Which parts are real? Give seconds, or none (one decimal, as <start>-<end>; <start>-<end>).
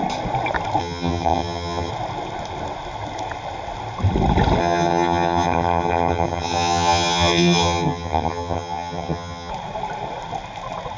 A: 0.0-0.8; 1.9-4.6; 9.5-11.0